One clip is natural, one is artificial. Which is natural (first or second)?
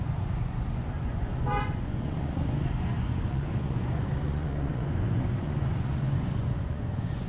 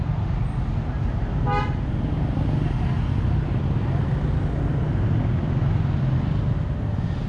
second